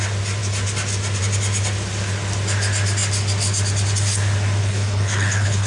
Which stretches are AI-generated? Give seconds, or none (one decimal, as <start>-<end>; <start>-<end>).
4.6-5.7